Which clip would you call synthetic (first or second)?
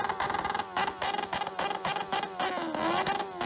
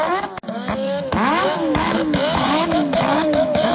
second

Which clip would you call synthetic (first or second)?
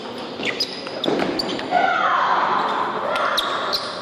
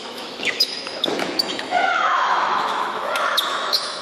second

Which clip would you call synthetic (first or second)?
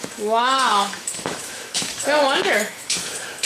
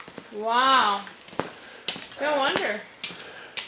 first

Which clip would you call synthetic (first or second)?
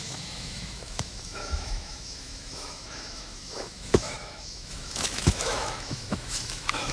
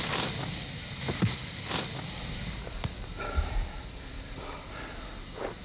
first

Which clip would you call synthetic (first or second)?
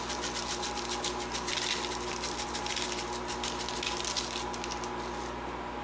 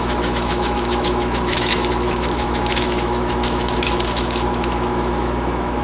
second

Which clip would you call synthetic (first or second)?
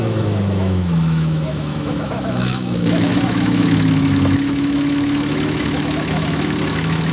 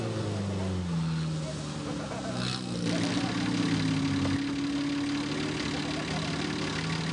first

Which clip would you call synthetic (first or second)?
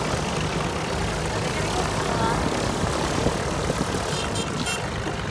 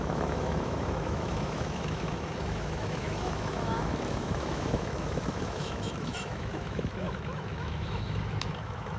second